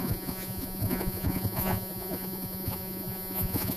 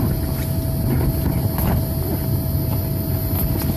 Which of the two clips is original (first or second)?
second